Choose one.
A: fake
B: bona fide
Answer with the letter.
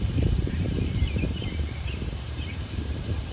A